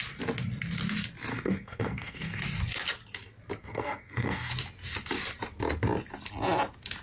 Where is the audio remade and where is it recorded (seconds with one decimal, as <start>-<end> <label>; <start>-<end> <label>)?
0.0-1.3 recorded; 1.3-2.4 remade; 2.4-3.6 recorded; 3.6-4.5 remade; 4.5-7.0 recorded